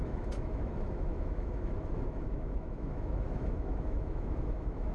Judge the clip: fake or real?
fake